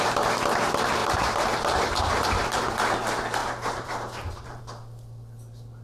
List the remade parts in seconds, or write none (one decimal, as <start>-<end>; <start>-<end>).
1.0-2.6; 3.4-4.6